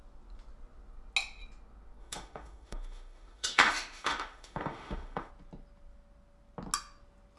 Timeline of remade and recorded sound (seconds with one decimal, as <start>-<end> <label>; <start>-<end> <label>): 0.0-2.0 recorded; 2.0-5.3 remade; 5.3-7.4 recorded